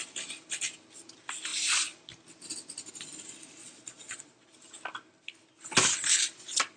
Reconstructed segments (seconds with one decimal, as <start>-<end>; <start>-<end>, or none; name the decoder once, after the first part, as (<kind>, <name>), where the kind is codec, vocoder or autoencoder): 3.6-4.5 (vocoder, Vocos)